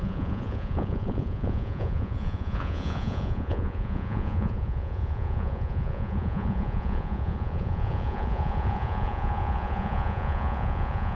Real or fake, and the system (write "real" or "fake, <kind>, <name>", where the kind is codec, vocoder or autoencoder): fake, vocoder, Vocos